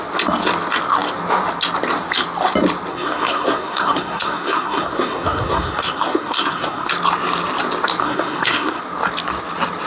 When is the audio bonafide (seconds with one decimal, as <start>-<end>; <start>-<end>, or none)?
0.0-2.9; 6.9-8.0; 8.8-9.9